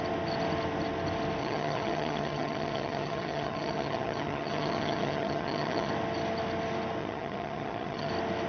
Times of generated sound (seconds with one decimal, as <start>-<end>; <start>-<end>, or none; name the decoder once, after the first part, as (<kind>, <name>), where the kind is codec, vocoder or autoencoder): 1.4-5.9 (vocoder, HiFi-GAN); 7.0-8.1